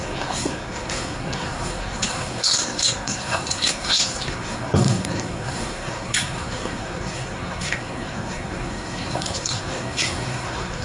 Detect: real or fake fake